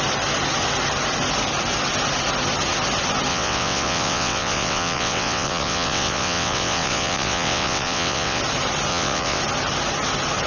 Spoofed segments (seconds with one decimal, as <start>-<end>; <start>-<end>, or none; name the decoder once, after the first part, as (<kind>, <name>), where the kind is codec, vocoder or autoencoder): 3.3-8.4 (vocoder, WaveNeXt); 8.9-9.4

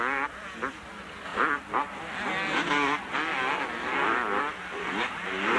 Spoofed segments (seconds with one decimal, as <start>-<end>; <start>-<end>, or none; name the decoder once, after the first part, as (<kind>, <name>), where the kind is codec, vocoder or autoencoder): none

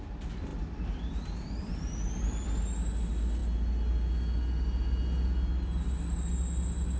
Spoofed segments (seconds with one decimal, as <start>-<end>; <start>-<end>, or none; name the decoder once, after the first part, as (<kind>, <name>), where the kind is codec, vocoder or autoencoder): 0.5-1.7 (vocoder, BigVGAN v2)

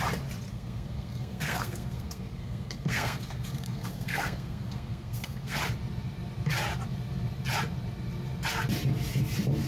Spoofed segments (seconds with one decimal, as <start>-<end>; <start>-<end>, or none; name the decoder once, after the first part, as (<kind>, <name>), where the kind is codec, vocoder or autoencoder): 0.5-5.6 (codec, SNAC)